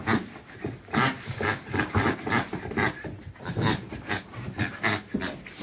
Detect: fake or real real